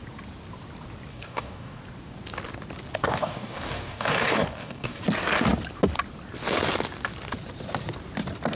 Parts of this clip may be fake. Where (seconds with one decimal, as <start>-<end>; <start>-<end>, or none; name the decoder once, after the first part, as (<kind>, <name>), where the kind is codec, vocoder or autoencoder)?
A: 1.1-1.8 (codec, DAC); 3.0-5.0